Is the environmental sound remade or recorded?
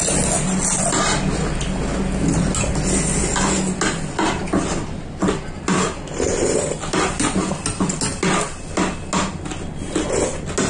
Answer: recorded